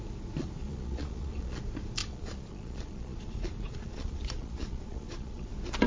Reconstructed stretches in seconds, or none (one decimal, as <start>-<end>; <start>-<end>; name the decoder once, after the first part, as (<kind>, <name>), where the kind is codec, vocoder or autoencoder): 0.6-1.6 (vocoder, Vocos); 2.0-5.5